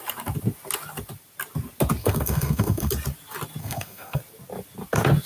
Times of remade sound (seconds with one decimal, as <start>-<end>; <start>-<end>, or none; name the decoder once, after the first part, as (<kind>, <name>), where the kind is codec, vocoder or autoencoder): 2.0-2.9 (codec, SNAC); 3.6-4.2